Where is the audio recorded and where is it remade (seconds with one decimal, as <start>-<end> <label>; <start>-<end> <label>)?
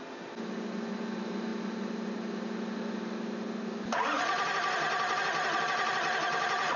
0.0-6.8 recorded